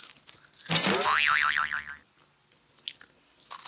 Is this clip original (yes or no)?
yes